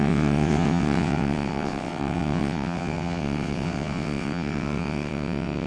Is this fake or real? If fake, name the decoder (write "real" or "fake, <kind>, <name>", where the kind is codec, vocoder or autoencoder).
fake, vocoder, WaveNeXt